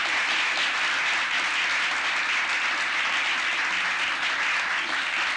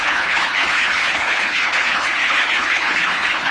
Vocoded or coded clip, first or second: second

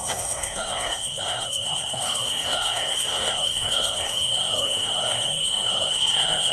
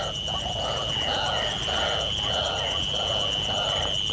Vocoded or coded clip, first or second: first